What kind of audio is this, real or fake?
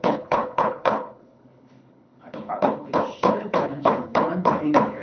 fake